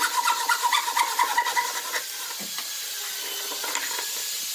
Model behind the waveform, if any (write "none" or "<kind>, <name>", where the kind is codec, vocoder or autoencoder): none